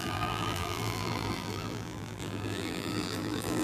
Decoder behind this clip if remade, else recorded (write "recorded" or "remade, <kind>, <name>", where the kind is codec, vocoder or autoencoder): remade, vocoder, BigVGAN v2